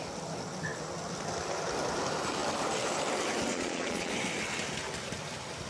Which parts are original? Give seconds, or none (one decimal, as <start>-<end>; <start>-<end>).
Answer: 0.0-3.5; 4.1-5.7